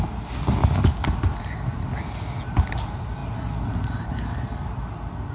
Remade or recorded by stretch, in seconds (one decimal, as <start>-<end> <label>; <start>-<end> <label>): 0.0-5.3 recorded